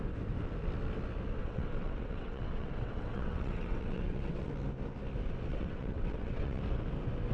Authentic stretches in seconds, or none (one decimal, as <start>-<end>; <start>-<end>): 0.0-1.4; 4.5-5.5; 6.6-7.3